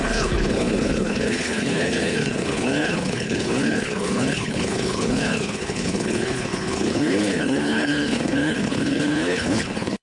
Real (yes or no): no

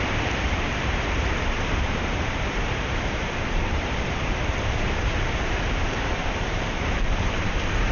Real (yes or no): no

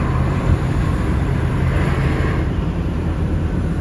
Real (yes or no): no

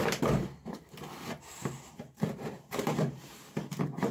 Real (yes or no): no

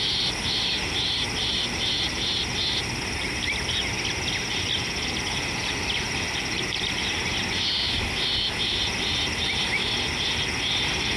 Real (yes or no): yes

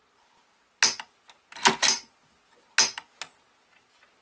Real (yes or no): yes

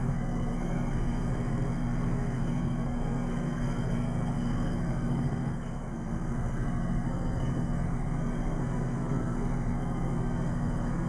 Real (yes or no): no